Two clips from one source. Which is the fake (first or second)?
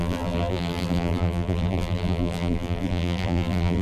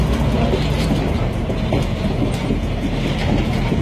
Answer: first